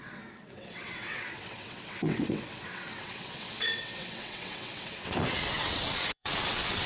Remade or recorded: remade